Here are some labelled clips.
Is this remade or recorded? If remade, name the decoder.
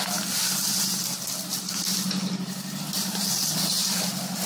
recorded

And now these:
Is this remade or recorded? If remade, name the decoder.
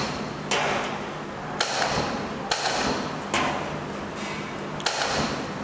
recorded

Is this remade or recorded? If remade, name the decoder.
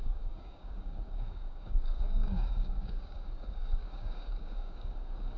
remade, codec, DAC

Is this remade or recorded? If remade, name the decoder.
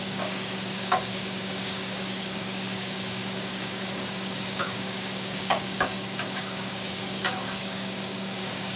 remade, codec, DAC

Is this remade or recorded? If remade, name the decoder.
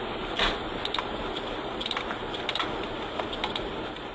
recorded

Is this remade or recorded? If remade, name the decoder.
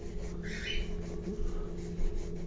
recorded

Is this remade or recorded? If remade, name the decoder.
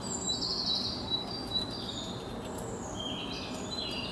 recorded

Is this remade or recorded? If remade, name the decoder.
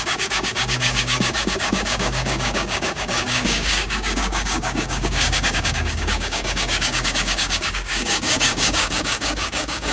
remade, codec, DAC